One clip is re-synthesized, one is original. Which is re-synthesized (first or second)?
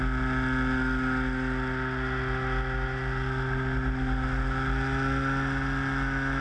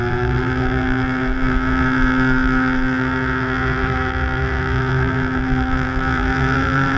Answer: second